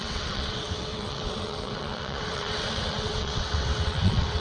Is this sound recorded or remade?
remade